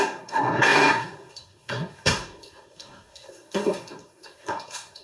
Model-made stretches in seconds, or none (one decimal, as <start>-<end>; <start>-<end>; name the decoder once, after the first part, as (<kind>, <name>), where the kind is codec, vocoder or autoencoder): 0.0-5.0 (codec, SNAC)